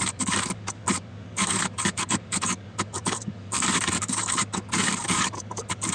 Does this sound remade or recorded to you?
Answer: remade